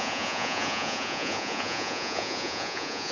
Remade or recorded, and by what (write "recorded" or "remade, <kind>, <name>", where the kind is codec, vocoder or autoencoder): remade, vocoder, Vocos